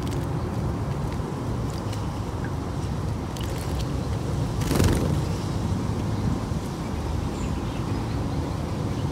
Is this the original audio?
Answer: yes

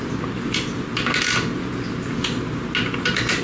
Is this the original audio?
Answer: yes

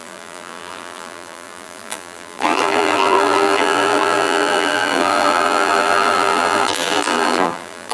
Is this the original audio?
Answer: no